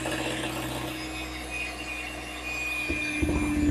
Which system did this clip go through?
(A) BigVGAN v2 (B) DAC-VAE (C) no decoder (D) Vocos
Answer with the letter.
C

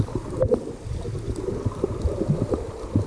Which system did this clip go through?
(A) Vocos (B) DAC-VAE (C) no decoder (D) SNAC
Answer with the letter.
C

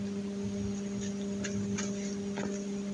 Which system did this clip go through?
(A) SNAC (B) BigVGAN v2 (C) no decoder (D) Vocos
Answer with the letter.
C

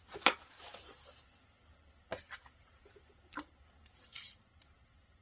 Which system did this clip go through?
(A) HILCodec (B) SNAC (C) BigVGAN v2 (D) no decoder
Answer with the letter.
D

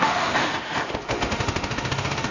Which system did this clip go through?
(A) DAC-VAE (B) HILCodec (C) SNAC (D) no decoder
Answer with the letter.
A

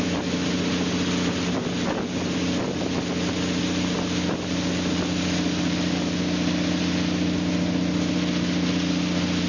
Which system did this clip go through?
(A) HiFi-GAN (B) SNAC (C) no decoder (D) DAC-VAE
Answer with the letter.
C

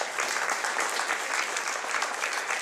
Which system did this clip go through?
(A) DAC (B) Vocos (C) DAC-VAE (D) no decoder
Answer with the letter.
D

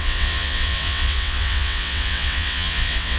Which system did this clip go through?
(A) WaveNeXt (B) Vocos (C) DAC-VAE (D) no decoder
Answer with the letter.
A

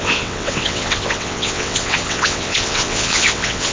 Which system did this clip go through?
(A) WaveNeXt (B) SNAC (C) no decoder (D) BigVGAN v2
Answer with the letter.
A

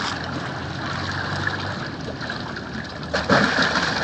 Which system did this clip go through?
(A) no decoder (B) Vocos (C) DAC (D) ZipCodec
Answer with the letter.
A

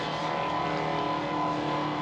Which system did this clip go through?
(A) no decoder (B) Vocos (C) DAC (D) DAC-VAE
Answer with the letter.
A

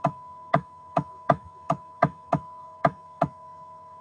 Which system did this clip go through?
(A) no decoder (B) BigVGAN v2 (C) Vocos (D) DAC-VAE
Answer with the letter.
D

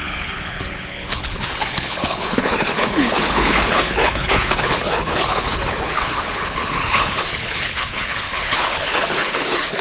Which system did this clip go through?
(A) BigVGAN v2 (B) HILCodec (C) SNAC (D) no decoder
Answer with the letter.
B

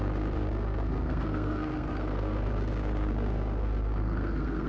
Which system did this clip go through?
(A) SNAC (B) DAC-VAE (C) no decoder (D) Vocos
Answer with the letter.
A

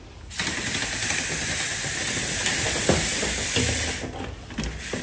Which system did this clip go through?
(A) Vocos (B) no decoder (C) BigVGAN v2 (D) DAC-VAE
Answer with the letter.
B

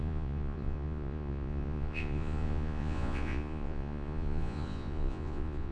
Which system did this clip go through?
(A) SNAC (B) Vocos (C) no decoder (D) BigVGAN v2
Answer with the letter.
B